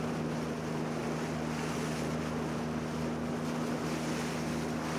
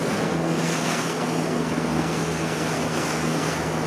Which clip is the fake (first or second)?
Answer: second